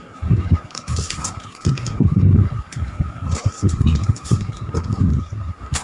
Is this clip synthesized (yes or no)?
yes